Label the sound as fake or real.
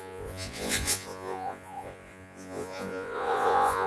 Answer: fake